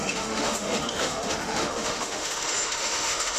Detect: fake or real fake